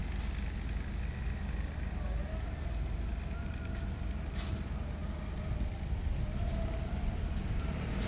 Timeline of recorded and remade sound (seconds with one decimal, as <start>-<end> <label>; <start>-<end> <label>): 0.0-8.1 recorded